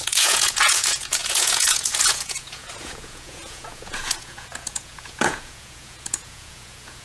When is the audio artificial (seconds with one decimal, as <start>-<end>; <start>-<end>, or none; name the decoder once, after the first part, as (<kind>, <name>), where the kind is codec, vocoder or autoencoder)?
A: 0.0-7.0 (vocoder, Vocos)